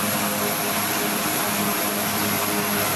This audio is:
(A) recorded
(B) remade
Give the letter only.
A